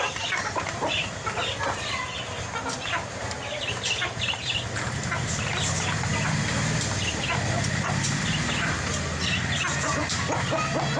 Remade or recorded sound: recorded